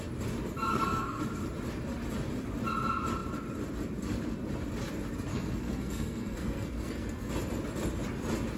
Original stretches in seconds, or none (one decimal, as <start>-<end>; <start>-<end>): 0.0-0.7; 1.2-5.3; 7.3-8.6